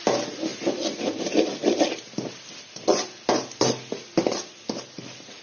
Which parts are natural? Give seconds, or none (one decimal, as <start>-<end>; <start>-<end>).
0.0-5.4